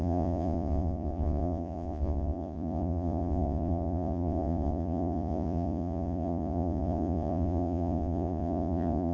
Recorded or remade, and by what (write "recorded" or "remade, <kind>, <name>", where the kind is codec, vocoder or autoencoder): remade, vocoder, Vocos